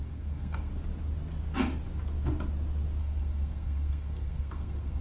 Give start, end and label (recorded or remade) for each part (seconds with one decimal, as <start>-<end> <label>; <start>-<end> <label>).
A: 0.0-0.7 remade; 0.7-3.0 recorded; 3.0-5.0 remade